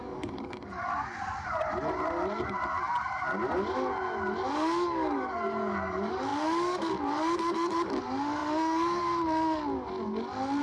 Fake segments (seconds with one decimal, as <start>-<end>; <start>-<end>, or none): 0.0-0.9; 4.5-9.6